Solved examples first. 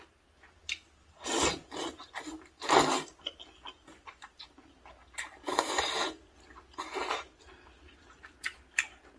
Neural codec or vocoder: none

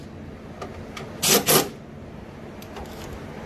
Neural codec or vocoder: none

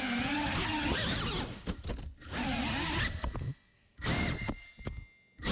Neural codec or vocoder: none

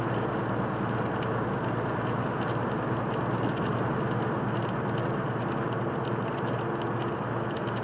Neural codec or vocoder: none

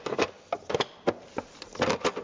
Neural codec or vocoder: none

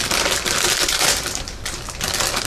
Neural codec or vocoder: vocoder, BigVGAN v2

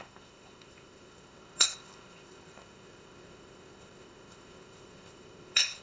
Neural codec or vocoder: codec, ZipCodec